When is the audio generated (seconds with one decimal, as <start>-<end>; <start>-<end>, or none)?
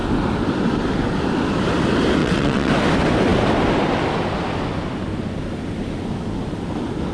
2.2-2.7